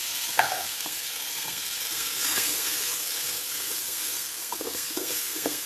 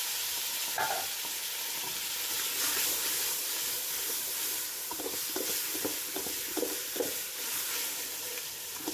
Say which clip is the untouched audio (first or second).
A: second